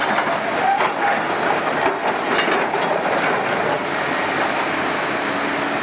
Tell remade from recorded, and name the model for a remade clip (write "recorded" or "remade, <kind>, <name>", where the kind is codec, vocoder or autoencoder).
recorded